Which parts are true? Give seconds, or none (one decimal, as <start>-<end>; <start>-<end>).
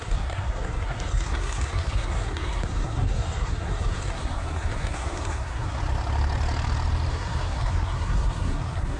5.8-7.1